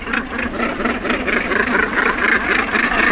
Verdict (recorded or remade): recorded